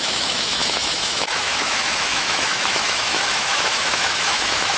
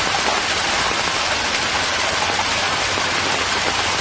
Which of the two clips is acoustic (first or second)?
second